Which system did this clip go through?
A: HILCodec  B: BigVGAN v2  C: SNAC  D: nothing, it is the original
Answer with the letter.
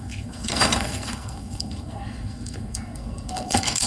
C